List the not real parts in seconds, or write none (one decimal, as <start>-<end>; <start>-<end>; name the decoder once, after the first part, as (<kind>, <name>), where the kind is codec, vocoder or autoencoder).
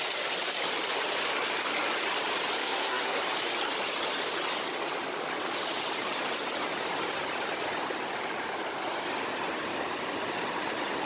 2.6-3.2 (codec, SNAC)